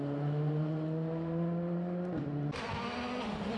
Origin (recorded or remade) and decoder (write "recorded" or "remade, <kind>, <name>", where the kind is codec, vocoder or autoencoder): recorded